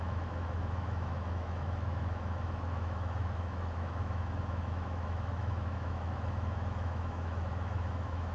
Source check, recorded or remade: remade